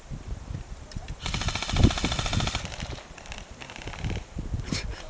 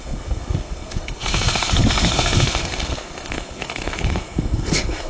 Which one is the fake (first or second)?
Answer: second